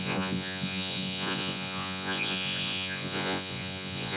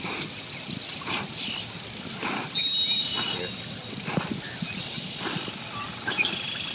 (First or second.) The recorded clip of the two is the second